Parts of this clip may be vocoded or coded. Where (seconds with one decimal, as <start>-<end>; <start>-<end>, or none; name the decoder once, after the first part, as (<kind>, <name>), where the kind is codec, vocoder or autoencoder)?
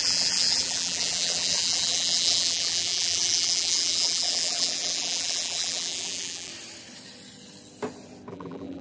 0.0-6.5 (vocoder, BigVGAN v2); 8.3-8.8